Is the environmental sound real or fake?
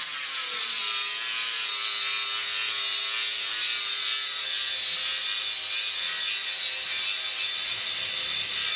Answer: real